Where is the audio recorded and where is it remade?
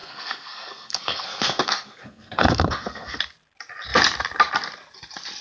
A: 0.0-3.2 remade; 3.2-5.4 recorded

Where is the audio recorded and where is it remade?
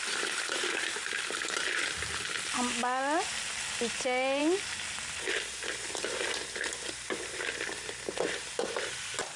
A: 0.0-9.4 recorded